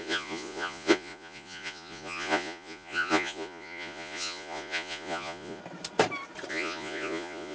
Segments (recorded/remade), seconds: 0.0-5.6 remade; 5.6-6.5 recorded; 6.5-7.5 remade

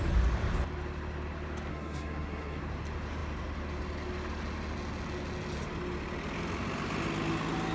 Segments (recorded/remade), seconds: 0.0-1.7 recorded; 1.7-2.6 remade; 2.6-7.7 recorded